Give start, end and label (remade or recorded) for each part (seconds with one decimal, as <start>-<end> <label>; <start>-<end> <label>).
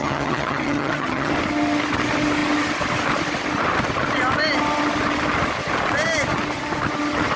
0.0-1.3 remade; 1.3-7.4 recorded